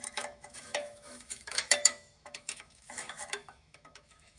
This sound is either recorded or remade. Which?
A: remade